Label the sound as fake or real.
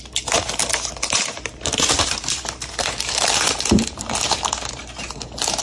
fake